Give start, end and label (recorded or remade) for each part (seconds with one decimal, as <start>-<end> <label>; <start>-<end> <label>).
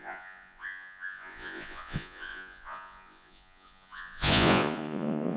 0.0-5.4 remade